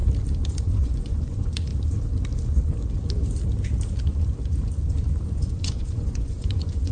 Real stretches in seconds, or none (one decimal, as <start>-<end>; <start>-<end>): 0.0-0.6; 1.7-5.4